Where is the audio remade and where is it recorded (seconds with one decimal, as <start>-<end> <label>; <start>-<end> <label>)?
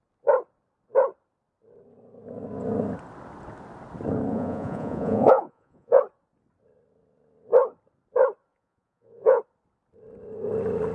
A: 0.0-4.3 recorded; 4.3-6.0 remade; 6.0-8.5 recorded; 8.5-9.4 remade; 9.4-10.9 recorded